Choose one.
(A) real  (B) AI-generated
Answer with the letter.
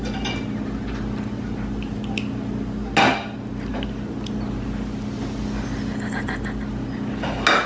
A